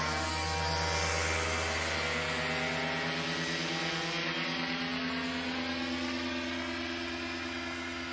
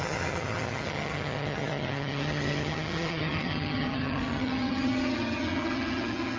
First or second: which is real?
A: first